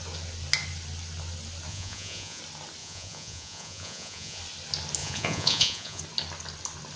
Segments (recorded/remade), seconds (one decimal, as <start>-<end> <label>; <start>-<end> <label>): 0.0-1.7 recorded; 1.7-2.4 remade; 2.4-2.8 recorded; 2.8-4.4 remade; 4.4-5.0 recorded; 5.0-6.0 remade; 6.0-7.0 recorded